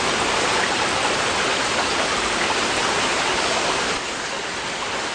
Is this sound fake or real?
real